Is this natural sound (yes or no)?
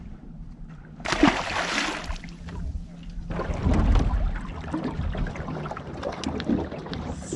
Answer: yes